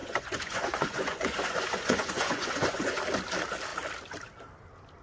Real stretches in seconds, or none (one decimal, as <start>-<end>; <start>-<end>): 3.0-5.0